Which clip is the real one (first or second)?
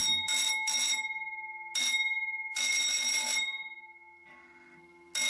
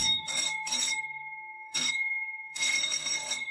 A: first